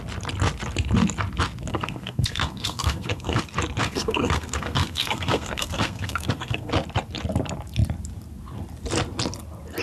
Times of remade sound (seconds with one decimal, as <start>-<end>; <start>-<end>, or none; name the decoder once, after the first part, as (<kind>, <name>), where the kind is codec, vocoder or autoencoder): 1.7-3.4 (codec, SNAC); 3.8-6.7